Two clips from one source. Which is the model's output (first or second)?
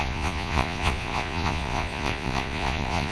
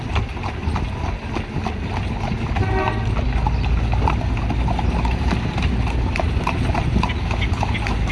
first